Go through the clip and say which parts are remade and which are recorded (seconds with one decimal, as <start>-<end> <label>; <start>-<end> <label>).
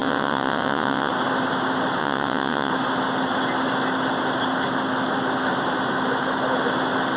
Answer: 0.0-1.1 remade; 1.1-2.0 recorded; 2.0-2.7 remade; 2.7-7.2 recorded